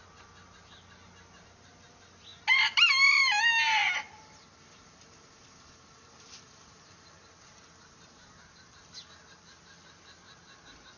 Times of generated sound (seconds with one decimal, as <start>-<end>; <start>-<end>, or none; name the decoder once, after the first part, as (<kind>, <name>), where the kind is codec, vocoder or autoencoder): 3.8-7.1 (vocoder, BigVGAN v2)